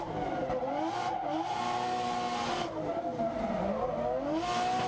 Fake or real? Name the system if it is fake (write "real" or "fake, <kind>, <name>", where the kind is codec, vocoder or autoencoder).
real